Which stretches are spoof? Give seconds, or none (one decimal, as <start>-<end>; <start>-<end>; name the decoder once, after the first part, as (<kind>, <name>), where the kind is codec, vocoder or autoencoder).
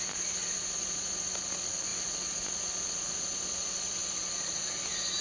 0.0-4.0 (vocoder, BigVGAN v2)